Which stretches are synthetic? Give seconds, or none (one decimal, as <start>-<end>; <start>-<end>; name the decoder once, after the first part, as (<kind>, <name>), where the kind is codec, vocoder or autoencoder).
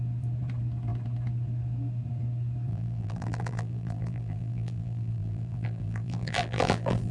2.7-7.1 (vocoder, BigVGAN v2)